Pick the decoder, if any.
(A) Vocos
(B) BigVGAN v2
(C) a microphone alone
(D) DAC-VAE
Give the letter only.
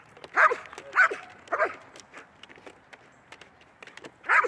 C